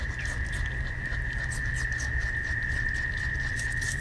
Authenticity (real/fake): real